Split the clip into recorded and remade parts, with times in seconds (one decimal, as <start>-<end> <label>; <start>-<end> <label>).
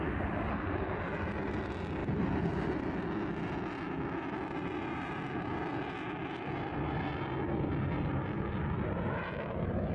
0.0-9.9 recorded